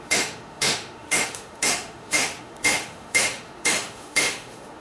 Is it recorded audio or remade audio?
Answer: remade